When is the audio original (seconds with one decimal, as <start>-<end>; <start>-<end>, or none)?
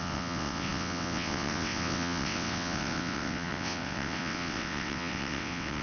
none